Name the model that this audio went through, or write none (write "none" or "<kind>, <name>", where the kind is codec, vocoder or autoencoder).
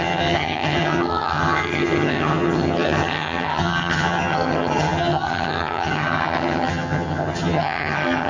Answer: vocoder, HiFi-GAN